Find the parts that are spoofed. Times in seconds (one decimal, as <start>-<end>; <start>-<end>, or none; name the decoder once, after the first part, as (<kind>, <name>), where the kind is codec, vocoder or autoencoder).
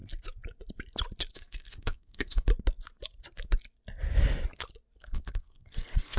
1.3-2.5 (codec, SNAC); 5.0-6.2